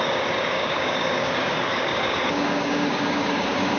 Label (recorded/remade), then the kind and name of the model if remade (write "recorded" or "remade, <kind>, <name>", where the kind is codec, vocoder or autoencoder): remade, codec, DAC